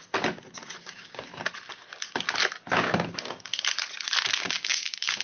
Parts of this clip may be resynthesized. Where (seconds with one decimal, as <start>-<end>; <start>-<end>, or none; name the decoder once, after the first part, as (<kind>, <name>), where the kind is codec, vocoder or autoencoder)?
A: 0.7-1.3 (codec, DAC); 2.7-3.5; 4.3-5.2